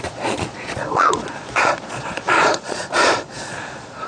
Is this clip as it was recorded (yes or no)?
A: no